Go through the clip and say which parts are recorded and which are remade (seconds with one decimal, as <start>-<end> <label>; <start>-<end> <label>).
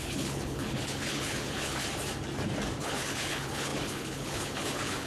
0.0-1.8 remade; 1.8-2.8 recorded; 2.8-5.1 remade